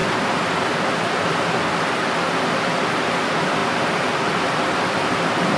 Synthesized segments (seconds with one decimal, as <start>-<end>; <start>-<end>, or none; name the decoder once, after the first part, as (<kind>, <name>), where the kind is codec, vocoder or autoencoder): 2.5-5.6 (vocoder, BigVGAN v2)